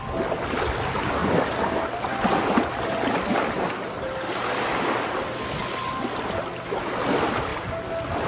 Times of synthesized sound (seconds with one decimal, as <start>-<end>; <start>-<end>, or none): none